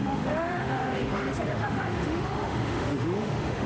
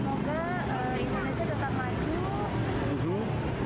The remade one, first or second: first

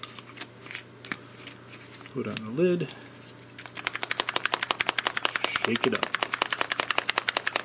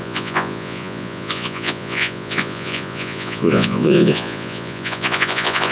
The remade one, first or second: second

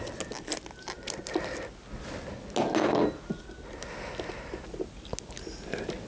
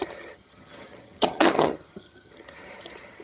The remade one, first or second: second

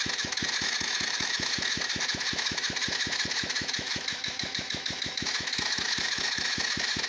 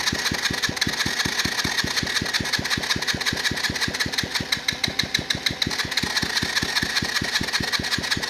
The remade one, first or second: first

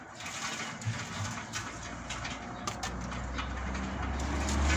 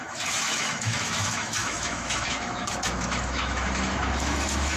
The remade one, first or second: second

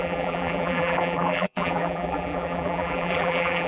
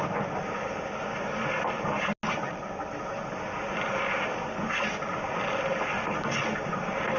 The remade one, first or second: first